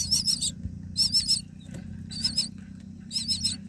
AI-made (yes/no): no